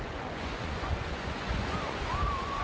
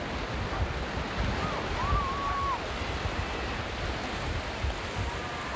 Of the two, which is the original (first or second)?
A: second